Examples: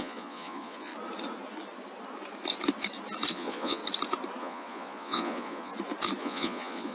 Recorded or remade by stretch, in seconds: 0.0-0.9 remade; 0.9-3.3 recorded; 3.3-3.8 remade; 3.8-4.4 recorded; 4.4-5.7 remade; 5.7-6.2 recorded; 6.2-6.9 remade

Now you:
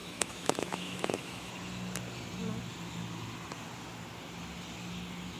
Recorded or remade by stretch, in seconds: 0.0-1.5 remade; 1.5-5.4 recorded

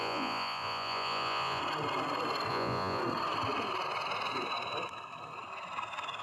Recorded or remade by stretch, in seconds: 0.0-1.6 remade; 1.6-2.5 recorded; 2.5-3.0 remade; 3.0-6.2 recorded

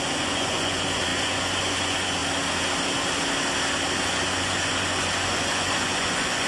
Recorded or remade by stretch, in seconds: 0.0-2.2 remade; 2.2-4.0 recorded; 4.0-6.5 remade

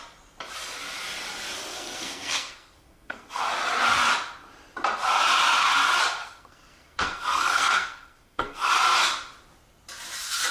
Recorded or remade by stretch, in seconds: 0.0-1.7 recorded; 1.7-3.4 remade; 3.4-6.2 recorded; 6.2-8.7 remade; 8.7-10.5 recorded

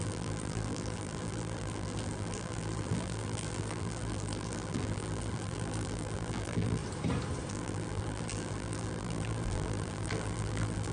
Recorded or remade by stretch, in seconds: 0.0-6.8 remade; 6.8-7.5 recorded; 7.5-10.9 remade

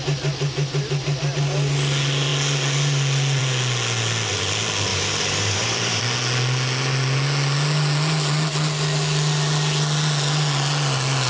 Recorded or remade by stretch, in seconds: 0.0-4.9 recorded; 4.9-6.0 remade; 6.0-11.3 recorded

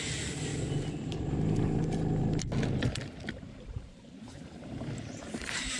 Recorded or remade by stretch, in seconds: 0.0-0.5 remade; 0.5-3.3 recorded; 3.3-5.8 remade